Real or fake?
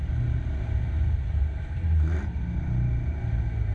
real